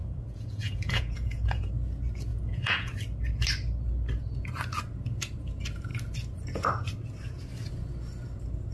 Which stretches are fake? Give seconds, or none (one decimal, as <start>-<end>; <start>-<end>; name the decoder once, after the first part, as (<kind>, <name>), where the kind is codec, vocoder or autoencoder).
0.0-1.7 (vocoder, Vocos); 2.3-2.9

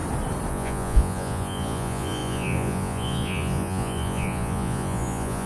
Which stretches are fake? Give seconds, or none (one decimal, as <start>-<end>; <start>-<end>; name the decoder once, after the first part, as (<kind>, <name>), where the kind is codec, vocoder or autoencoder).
0.5-5.5 (vocoder, Vocos)